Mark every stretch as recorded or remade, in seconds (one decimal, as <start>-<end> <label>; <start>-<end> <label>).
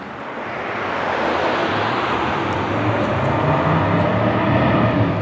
0.0-1.6 recorded; 1.6-3.2 remade; 3.2-5.2 recorded